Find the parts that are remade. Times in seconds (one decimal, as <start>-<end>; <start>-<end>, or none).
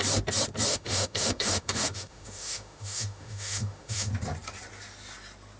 0.7-4.1